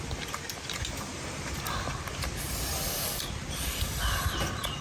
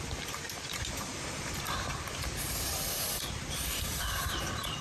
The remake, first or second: second